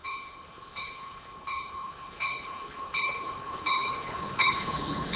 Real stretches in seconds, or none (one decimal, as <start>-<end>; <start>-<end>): none